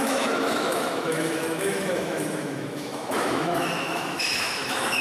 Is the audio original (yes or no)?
no